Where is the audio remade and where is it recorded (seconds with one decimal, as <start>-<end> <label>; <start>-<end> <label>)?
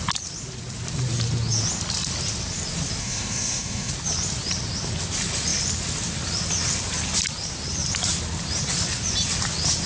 0.0-3.0 recorded; 3.0-3.9 remade; 3.9-9.9 recorded